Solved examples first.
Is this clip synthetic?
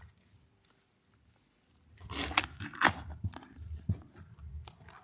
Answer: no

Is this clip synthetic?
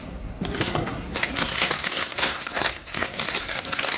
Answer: yes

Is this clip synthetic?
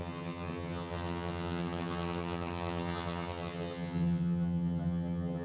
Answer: yes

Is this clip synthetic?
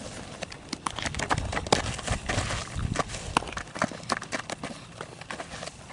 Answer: no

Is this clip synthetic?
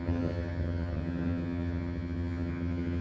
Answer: yes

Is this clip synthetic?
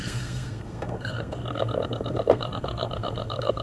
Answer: yes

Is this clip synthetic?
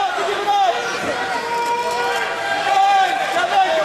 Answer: no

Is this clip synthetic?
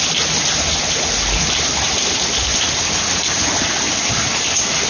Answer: no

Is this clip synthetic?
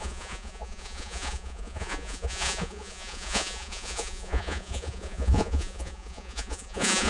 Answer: yes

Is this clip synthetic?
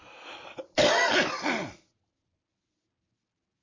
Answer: no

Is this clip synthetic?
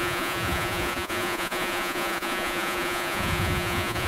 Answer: yes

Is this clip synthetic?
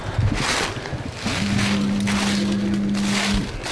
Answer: no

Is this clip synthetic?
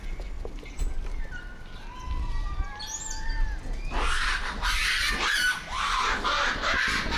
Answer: no